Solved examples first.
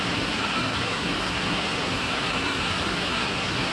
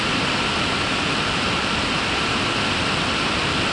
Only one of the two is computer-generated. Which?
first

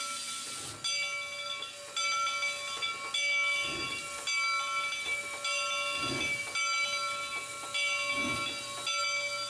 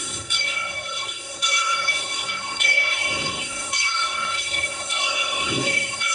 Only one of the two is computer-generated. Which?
second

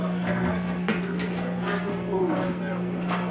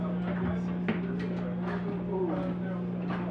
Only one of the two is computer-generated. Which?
first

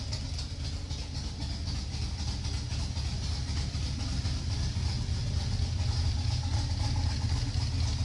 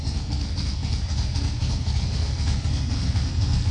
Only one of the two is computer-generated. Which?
second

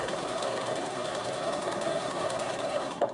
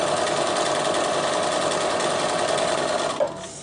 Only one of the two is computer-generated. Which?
first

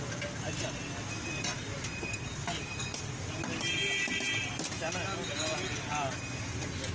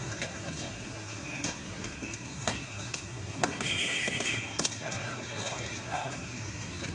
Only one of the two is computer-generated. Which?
second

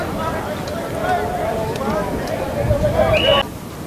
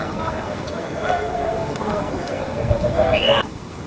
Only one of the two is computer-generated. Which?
second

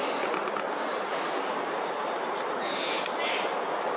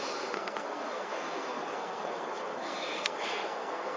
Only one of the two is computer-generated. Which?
second